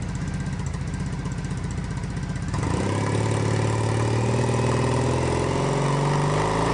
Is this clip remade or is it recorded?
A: recorded